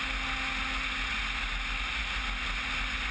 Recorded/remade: recorded